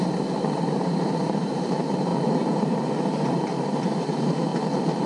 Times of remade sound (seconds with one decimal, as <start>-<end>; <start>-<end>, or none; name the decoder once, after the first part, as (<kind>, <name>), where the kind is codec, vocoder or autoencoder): 0.0-2.1 (vocoder, BigVGAN v2); 2.6-4.5